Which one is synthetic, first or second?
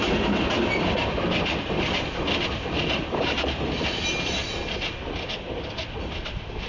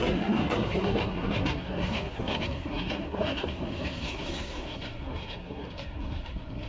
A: second